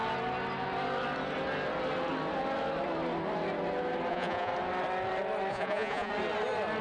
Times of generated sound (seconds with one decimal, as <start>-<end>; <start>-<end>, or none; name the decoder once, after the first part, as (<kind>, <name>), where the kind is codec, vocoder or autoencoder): 4.1-4.5 (vocoder, Vocos); 5.5-6.1